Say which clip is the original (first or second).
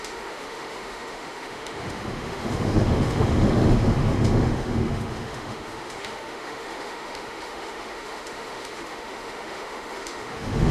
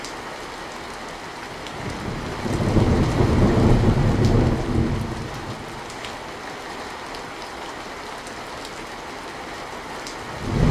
second